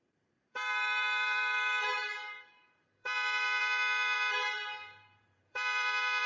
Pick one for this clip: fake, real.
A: fake